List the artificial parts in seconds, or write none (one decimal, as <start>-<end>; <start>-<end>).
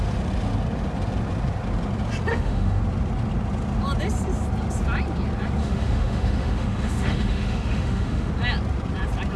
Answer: 2.3-2.8; 5.6-8.3